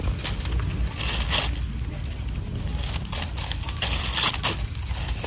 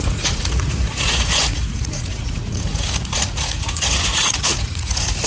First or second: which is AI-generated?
second